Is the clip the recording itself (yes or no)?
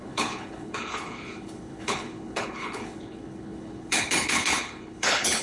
no